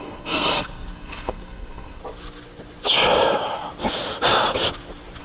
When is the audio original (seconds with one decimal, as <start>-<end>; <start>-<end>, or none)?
2.0-5.2